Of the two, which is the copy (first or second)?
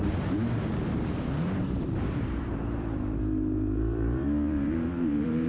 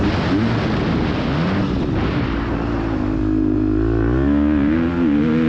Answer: first